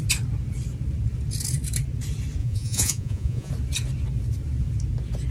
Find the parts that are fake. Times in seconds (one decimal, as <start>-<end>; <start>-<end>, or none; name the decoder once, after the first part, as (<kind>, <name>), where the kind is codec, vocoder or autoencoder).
2.4-3.5 (vocoder, Vocos)